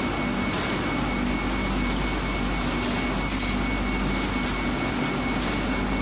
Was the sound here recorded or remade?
recorded